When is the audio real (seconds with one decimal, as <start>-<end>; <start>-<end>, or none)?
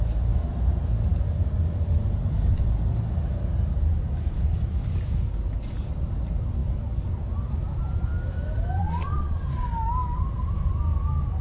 0.0-8.8; 9.4-11.4